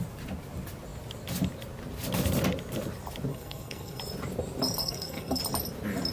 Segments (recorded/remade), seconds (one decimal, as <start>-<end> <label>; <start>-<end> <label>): 0.0-3.3 recorded; 3.3-4.0 remade; 4.0-4.8 recorded; 4.8-5.4 remade; 5.4-6.1 recorded